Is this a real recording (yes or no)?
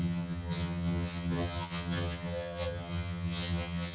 no